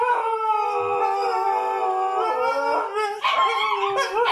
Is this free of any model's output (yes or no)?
yes